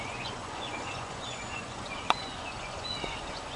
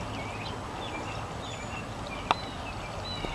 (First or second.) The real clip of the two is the second